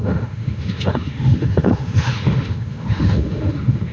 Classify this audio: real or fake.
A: fake